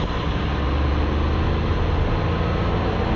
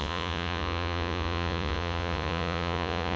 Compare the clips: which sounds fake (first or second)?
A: second